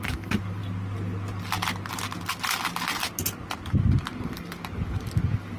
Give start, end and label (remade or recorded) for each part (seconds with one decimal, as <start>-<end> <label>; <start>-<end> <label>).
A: 0.0-0.6 remade; 0.6-4.0 recorded; 4.0-5.6 remade